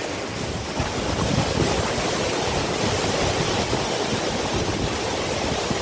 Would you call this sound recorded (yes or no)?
yes